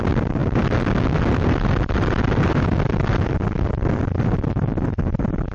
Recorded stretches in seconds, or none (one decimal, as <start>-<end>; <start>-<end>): 0.0-5.5